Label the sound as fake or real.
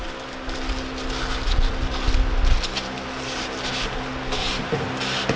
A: real